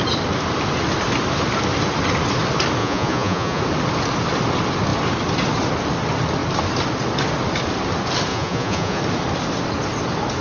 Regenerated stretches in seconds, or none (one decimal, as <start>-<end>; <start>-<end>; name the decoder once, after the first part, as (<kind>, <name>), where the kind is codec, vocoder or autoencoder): 2.8-3.6 (vocoder, Vocos); 8.3-9.0